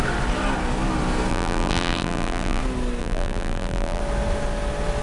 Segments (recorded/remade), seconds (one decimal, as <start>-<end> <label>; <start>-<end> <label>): 0.0-1.3 recorded; 1.3-2.6 remade; 2.6-3.0 recorded; 3.0-4.0 remade; 4.0-5.0 recorded